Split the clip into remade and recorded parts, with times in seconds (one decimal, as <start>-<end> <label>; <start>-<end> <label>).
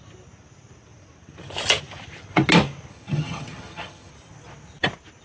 0.0-2.9 recorded; 2.9-4.1 remade; 4.1-5.2 recorded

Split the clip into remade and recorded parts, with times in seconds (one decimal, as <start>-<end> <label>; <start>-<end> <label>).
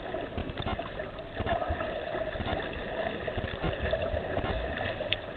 0.0-5.4 recorded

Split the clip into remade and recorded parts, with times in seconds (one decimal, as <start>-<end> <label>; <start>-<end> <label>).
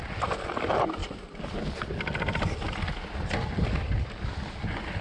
0.0-1.0 remade; 1.0-4.0 recorded; 4.0-5.0 remade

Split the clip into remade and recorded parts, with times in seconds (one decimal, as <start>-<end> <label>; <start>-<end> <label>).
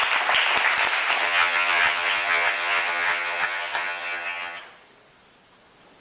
0.0-1.2 recorded; 1.2-4.6 remade; 4.6-6.0 recorded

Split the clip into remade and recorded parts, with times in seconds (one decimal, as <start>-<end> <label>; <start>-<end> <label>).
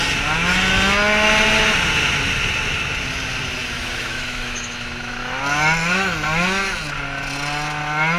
0.0-3.6 recorded; 3.6-5.4 remade; 5.4-8.2 recorded